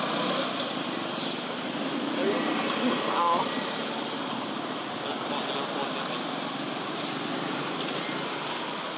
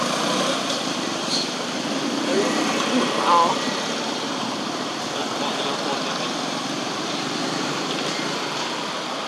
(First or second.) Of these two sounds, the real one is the first